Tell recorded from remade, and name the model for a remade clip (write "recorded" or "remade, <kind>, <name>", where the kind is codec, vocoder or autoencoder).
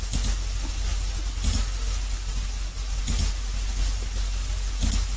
recorded